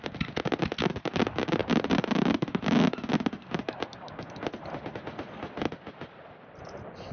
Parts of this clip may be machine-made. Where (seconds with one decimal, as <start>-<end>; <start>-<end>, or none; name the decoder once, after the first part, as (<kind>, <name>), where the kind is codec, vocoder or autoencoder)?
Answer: none